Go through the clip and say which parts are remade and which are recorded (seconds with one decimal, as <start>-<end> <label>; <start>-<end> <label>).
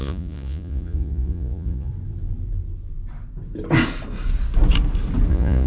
0.0-1.9 remade; 1.9-5.3 recorded; 5.3-5.7 remade